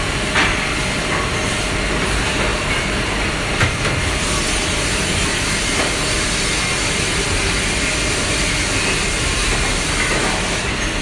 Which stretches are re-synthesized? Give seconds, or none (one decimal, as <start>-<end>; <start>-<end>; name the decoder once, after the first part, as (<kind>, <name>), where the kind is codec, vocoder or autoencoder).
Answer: 2.5-3.7 (vocoder, BigVGAN v2); 9.4-9.9